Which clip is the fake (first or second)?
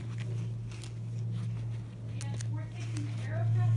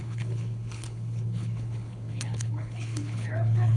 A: second